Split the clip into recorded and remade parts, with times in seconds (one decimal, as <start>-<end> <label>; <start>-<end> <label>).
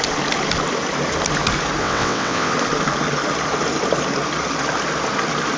0.0-1.8 recorded; 1.8-2.5 remade; 2.5-5.6 recorded